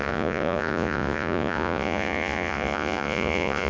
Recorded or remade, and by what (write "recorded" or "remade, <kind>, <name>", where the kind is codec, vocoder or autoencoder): remade, vocoder, Vocos